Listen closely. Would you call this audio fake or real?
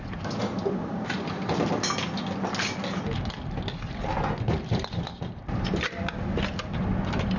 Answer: real